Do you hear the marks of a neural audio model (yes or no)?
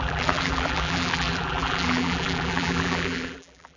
yes